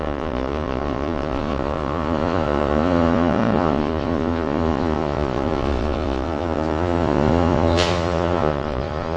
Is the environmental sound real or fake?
fake